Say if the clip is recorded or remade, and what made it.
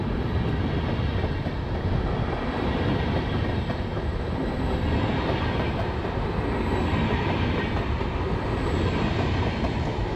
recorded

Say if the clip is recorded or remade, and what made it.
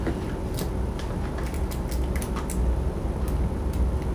recorded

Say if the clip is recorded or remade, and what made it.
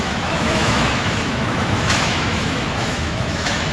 remade, autoencoder, DAC-VAE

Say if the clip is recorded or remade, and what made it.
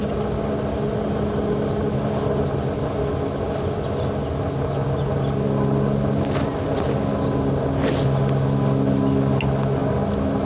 recorded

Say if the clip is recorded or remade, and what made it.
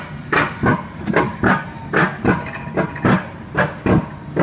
recorded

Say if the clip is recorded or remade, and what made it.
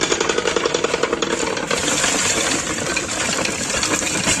remade, vocoder, BigVGAN v2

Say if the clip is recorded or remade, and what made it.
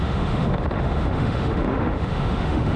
remade, autoencoder, DAC-VAE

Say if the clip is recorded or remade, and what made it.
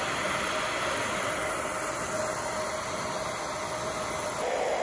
recorded